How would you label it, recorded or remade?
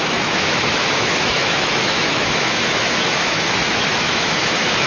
remade